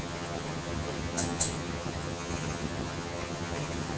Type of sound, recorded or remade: remade